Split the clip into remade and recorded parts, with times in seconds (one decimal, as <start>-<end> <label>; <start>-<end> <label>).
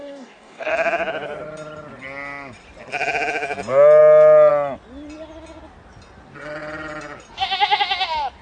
0.0-0.7 remade; 0.7-8.4 recorded